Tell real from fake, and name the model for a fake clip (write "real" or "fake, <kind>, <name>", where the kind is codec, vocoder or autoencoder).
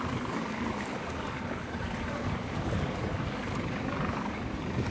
fake, codec, DAC